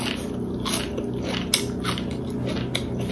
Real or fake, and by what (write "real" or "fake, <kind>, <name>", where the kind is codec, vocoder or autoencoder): real